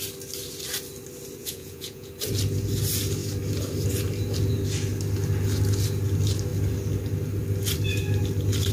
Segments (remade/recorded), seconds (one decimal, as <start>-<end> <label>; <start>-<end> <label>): 0.0-1.4 recorded; 1.4-2.1 remade; 2.1-8.7 recorded